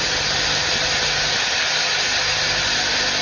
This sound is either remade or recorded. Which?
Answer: recorded